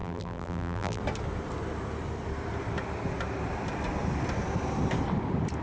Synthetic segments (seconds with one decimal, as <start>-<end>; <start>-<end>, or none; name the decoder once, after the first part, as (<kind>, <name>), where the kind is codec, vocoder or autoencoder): 0.0-1.0 (vocoder, BigVGAN v2)